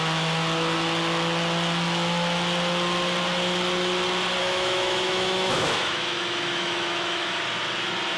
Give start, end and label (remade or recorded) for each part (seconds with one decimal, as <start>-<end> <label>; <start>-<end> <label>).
0.0-4.4 recorded; 4.4-7.4 remade; 7.4-8.2 recorded